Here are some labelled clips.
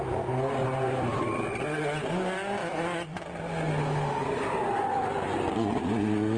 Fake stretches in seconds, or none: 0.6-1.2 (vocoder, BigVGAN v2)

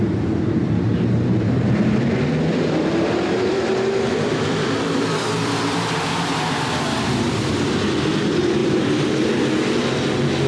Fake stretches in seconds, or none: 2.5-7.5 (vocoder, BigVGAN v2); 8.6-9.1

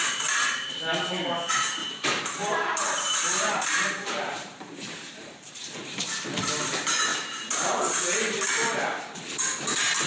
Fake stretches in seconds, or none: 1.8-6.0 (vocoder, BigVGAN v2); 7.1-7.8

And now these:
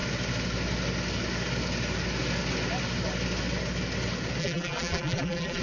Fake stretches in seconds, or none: 4.4-5.6 (vocoder, BigVGAN v2)

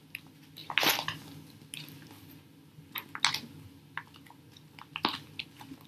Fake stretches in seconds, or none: none

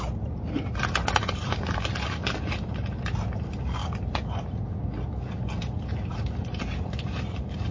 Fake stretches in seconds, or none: 0.0-3.8 (vocoder, BigVGAN v2); 5.9-7.7

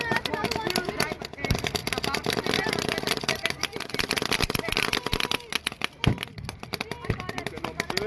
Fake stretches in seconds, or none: none

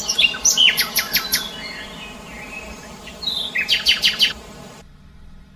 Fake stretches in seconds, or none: 2.3-4.8 (vocoder, BigVGAN v2)